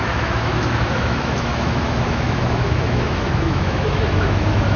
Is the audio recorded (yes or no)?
no